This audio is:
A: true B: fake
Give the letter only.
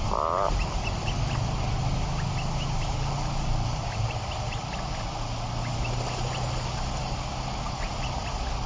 A